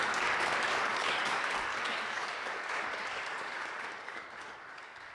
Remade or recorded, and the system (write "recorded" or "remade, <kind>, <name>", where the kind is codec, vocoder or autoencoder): remade, codec, DAC